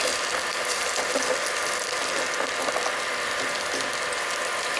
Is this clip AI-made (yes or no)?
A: no